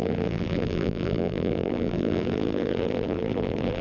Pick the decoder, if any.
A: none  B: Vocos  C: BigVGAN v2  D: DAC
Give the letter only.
C